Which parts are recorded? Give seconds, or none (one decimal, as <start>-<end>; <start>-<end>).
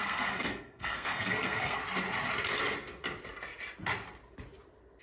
1.8-5.0